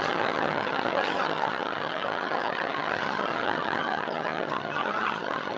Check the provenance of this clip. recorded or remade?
remade